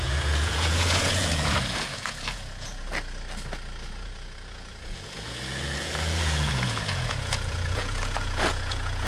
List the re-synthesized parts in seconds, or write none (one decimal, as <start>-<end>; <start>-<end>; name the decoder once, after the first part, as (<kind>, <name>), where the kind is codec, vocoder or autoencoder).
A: 0.0-2.9 (vocoder, Vocos); 3.9-9.1